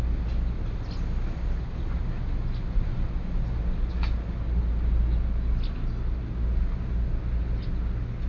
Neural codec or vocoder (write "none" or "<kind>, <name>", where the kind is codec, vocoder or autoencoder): none